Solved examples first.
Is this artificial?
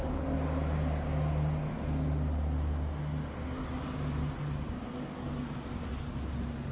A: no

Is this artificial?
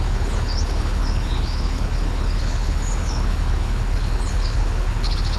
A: yes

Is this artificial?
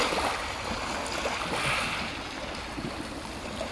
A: no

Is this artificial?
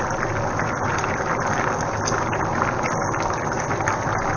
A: no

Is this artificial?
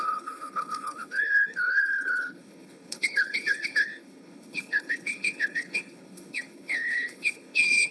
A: yes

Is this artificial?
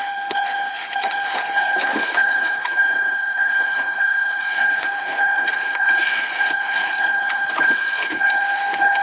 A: yes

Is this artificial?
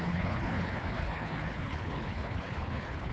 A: yes